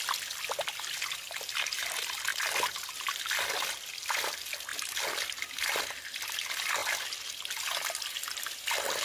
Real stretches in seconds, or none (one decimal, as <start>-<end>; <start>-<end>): 0.0-2.3; 2.9-6.8; 7.3-9.0